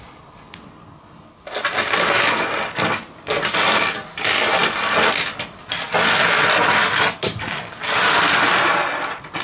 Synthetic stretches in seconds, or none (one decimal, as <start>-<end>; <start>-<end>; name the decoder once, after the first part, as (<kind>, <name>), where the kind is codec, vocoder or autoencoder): none